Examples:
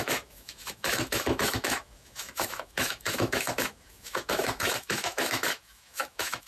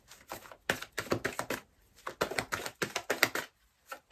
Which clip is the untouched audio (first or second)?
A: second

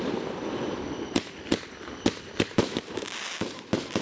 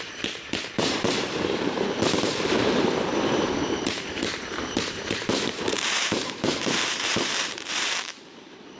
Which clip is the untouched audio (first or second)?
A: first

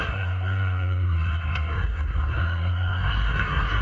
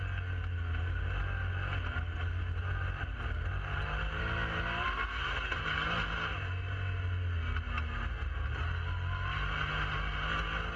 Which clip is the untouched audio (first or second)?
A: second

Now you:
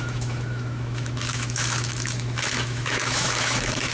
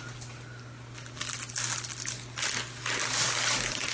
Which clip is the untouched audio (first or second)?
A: second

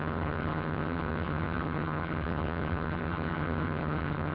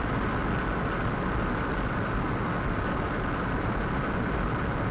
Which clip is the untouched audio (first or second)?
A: second